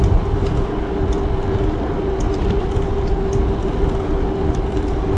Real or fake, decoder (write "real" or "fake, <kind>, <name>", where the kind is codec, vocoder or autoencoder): real